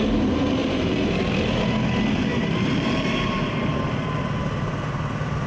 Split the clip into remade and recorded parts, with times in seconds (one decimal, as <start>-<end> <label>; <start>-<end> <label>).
0.0-0.6 recorded; 0.6-1.6 remade; 1.6-2.3 recorded; 2.3-3.9 remade; 3.9-5.5 recorded